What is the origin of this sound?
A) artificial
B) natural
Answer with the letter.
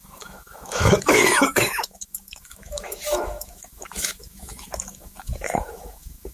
A